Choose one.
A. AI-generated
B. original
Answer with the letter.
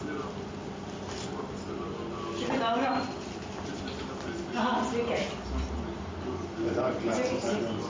B